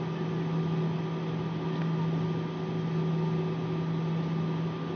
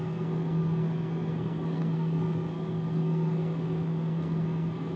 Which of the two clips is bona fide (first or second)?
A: first